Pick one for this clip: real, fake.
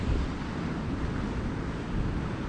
real